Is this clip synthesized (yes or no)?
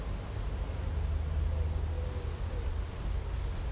no